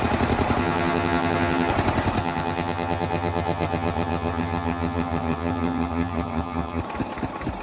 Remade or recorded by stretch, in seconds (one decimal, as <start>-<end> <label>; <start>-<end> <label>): 0.0-0.6 recorded; 0.6-1.7 remade; 1.7-2.2 recorded; 2.2-6.8 remade; 6.8-7.6 recorded